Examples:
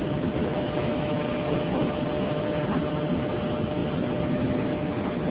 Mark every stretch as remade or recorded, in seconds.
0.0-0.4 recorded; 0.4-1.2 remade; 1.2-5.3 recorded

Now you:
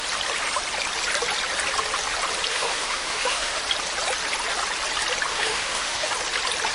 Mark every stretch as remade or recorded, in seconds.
0.0-2.5 recorded; 2.5-3.6 remade; 3.6-5.3 recorded; 5.3-6.1 remade; 6.1-6.7 recorded

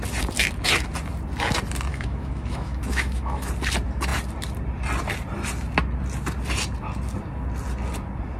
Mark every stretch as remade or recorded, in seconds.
0.0-1.9 recorded; 1.9-3.5 remade; 3.5-8.4 recorded

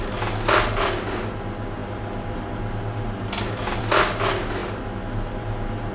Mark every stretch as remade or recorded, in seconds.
0.0-5.9 recorded

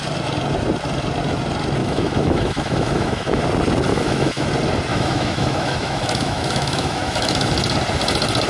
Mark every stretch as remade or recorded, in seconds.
0.0-1.8 recorded; 1.8-3.4 remade; 3.4-3.9 recorded; 3.9-4.5 remade; 4.5-4.9 recorded; 4.9-7.5 remade; 7.5-8.5 recorded

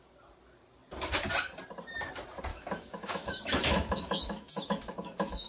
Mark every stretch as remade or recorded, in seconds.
0.0-2.5 recorded; 2.5-5.5 remade

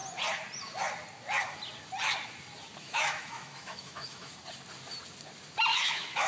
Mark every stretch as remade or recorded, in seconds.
0.0-2.8 recorded; 2.8-4.3 remade; 4.3-5.7 recorded; 5.7-6.3 remade

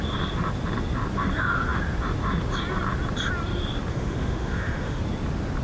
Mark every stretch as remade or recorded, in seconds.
0.0-3.9 recorded; 3.9-5.0 remade; 5.0-5.6 recorded